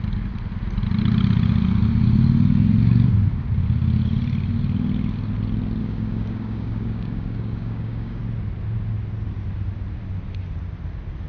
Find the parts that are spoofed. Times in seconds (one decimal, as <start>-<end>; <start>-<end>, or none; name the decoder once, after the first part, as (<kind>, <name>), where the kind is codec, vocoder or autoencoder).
5.8-8.2 (codec, DAC)